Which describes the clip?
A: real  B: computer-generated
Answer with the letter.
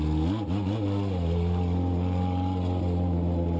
A